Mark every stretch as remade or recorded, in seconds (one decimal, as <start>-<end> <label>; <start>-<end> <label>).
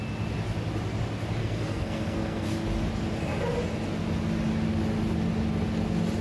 0.0-1.4 recorded; 1.4-2.5 remade; 2.5-6.2 recorded